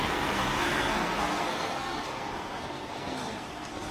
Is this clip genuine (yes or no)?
no